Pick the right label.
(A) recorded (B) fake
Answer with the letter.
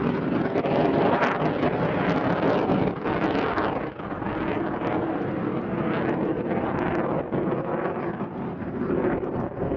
A